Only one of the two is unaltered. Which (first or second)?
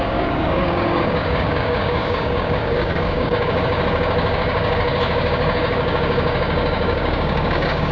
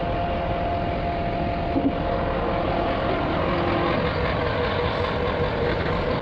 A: second